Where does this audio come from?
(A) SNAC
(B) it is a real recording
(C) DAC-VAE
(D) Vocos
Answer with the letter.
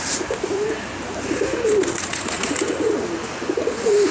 B